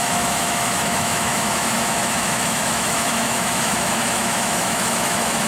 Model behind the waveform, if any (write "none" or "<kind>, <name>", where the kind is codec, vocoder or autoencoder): autoencoder, DAC-VAE